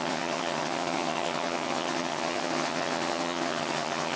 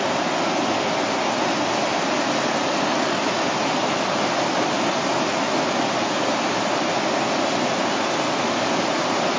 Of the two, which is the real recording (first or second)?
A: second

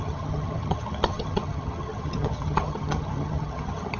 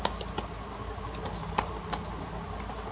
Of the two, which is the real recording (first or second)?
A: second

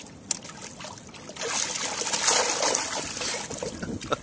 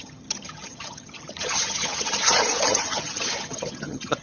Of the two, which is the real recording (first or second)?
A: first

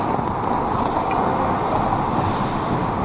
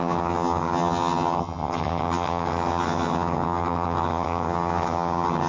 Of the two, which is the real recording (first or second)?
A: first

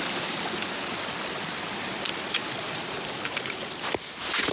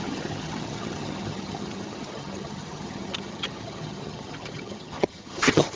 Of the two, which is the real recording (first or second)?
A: first